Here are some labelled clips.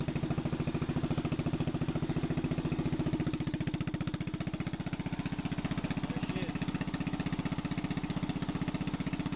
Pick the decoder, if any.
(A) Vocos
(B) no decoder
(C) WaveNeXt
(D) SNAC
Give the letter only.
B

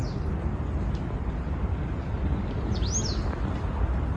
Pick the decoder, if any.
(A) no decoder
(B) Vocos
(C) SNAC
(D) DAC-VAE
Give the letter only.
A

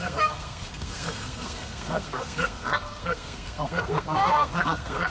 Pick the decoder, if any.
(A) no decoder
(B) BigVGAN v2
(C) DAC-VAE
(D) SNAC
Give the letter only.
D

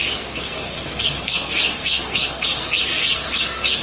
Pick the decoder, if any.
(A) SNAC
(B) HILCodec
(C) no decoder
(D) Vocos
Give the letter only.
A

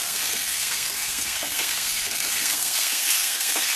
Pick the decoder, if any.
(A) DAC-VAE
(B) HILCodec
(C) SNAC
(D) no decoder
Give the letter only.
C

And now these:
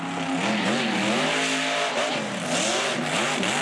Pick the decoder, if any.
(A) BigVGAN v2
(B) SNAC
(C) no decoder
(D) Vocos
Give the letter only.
C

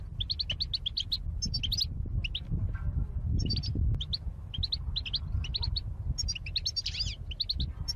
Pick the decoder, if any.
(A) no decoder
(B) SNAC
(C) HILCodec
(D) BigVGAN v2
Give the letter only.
A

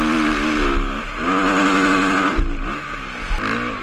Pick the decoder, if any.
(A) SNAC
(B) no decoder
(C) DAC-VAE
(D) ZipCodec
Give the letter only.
B